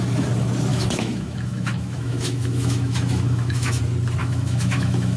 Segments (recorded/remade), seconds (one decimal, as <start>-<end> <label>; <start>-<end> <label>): 0.0-0.7 recorded; 0.7-3.8 remade; 3.8-4.2 recorded; 4.2-5.2 remade